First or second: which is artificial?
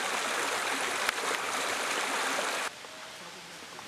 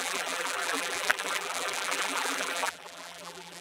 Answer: second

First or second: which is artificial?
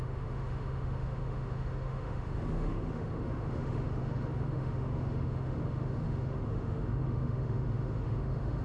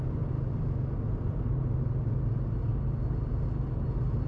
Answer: first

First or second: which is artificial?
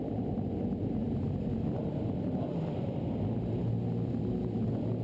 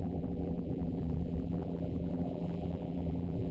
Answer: second